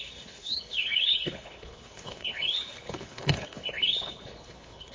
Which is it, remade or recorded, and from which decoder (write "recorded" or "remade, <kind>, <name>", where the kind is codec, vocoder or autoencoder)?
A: remade, codec, HILCodec